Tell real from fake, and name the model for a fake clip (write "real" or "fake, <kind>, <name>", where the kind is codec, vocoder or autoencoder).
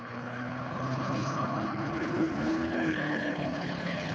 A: fake, codec, HILCodec